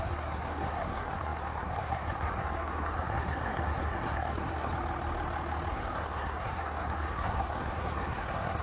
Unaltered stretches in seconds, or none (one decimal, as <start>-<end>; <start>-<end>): 4.7-5.7

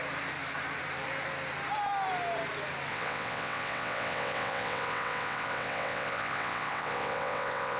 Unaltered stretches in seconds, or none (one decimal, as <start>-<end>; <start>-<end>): 0.0-2.9

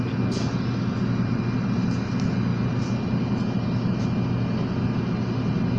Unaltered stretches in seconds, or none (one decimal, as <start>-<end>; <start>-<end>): 0.0-5.8